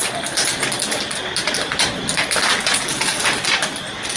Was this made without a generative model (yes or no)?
yes